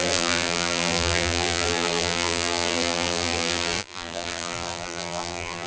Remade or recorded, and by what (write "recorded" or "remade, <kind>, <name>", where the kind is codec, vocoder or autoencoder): remade, vocoder, BigVGAN v2